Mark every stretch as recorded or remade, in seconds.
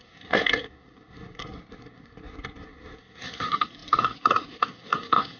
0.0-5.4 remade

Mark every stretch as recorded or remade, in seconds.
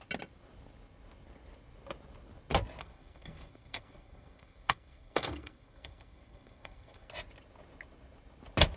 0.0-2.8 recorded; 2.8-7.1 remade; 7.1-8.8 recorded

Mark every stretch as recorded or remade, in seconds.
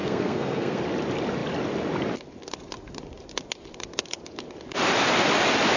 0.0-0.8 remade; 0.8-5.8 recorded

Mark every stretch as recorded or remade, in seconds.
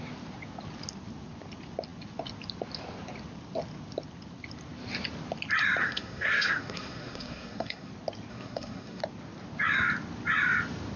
0.0-5.8 recorded; 5.8-7.9 remade; 7.9-8.3 recorded; 8.3-9.0 remade; 9.0-11.0 recorded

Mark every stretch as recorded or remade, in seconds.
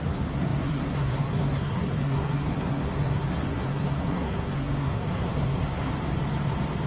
0.0-5.9 remade; 5.9-6.9 recorded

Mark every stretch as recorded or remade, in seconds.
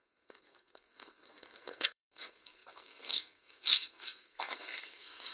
0.0-5.3 remade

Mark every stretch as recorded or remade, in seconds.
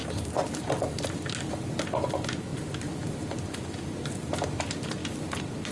0.0-5.7 recorded